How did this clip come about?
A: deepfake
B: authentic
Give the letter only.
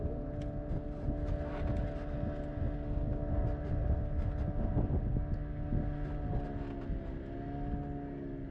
B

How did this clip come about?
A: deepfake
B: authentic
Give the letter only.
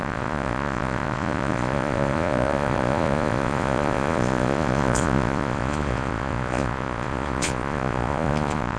A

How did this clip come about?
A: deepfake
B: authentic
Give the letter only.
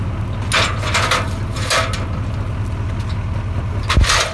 B